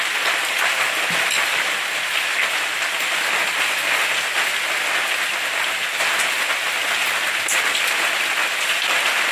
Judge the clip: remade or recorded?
recorded